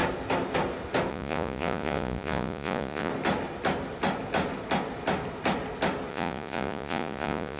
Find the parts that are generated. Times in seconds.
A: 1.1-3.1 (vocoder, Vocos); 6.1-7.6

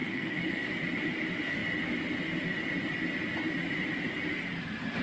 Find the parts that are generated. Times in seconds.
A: 0.0-0.7 (codec, SNAC)

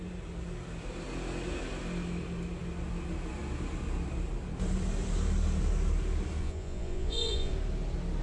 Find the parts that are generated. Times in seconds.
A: 6.4-7.5 (vocoder, Vocos)

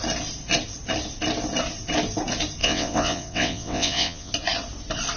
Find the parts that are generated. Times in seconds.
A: 2.6-4.3 (vocoder, WaveNeXt)

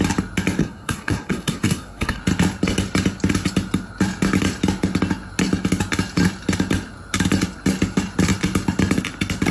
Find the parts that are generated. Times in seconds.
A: 0.6-2.2 (codec, SNAC)

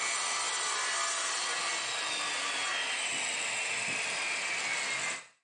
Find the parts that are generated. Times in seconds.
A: none

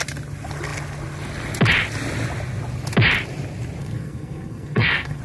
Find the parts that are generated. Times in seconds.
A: 3.8-5.2 (codec, SNAC)